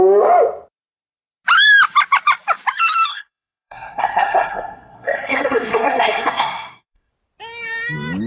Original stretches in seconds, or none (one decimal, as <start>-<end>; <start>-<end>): 0.0-3.1; 7.1-8.3